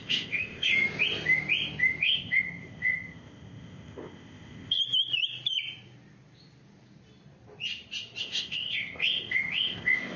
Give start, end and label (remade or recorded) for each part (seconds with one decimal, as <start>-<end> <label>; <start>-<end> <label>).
0.0-0.7 remade; 0.7-2.0 recorded; 2.0-4.8 remade; 4.8-8.2 recorded; 8.2-10.2 remade